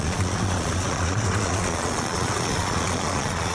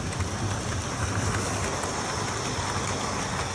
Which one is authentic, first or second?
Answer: second